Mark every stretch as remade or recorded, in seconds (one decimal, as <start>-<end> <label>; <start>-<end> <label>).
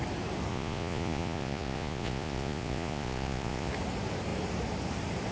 0.0-0.5 recorded; 0.5-3.7 remade; 3.7-5.3 recorded